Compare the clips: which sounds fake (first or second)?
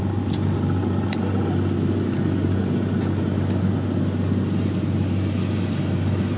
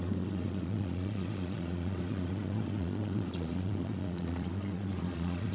second